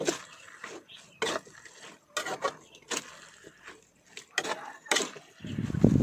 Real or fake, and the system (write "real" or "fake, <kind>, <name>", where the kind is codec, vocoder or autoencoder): real